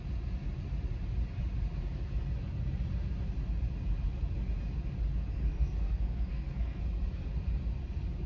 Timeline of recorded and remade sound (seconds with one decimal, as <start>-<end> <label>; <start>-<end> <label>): 0.0-5.3 recorded; 5.3-6.8 remade; 6.8-8.3 recorded